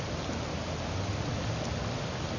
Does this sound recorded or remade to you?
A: recorded